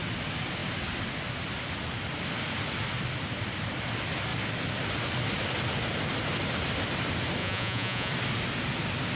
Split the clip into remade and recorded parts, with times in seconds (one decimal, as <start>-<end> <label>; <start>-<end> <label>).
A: 0.0-7.4 recorded; 7.4-8.1 remade; 8.1-9.2 recorded